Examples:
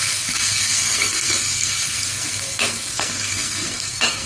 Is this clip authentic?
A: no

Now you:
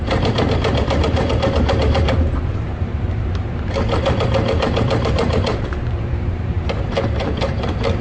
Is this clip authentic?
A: no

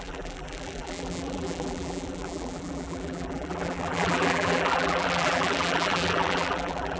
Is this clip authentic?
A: no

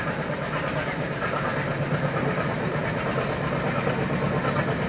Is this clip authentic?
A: yes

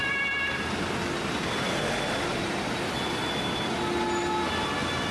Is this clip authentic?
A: yes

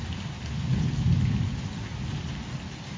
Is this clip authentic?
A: yes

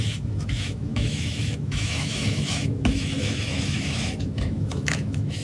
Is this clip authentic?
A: no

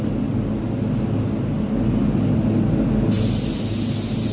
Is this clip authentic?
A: yes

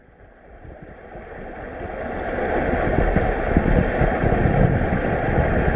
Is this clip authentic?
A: yes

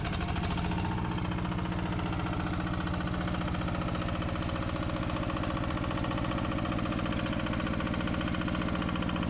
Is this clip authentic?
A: yes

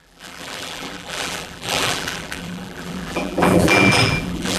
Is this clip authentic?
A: no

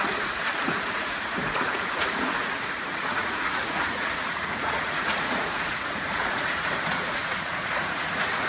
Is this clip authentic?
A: no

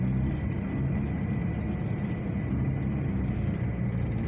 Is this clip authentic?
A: yes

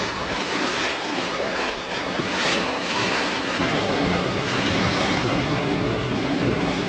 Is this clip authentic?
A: no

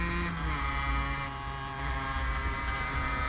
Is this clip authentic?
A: yes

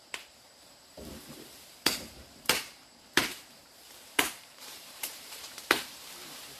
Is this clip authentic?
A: no